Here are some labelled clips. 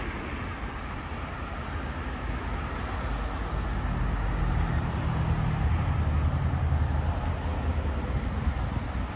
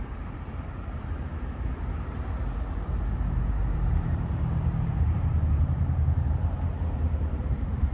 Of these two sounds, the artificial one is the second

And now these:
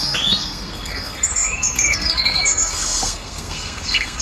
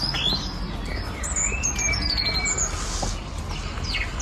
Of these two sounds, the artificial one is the first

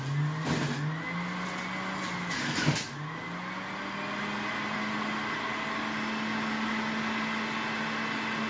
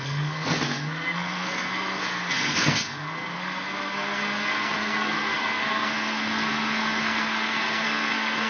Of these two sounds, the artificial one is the second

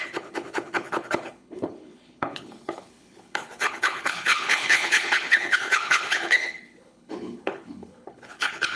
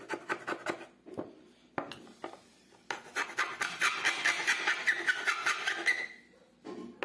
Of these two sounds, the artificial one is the first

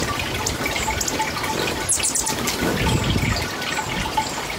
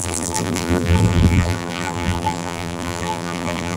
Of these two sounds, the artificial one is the second